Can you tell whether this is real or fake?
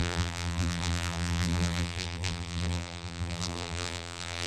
fake